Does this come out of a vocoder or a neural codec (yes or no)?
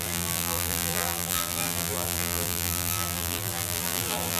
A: yes